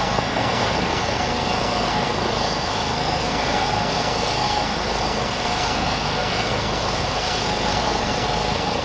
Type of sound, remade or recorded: remade